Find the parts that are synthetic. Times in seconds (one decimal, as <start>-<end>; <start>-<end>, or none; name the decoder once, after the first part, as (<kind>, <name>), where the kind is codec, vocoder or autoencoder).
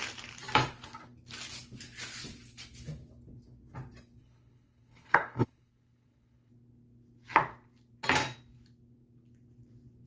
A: 4.2-6.5 (codec, HILCodec)